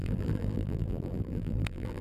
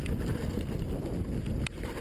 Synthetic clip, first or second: first